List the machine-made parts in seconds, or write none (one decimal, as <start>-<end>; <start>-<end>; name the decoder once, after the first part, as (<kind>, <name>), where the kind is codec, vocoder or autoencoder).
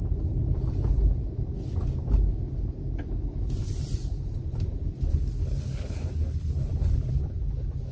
5.1-7.2 (codec, HILCodec)